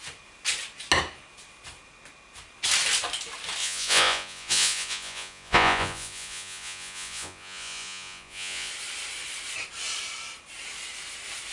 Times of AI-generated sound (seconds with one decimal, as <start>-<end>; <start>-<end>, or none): 3.6-8.7